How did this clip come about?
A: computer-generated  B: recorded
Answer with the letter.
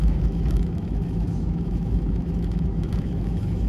A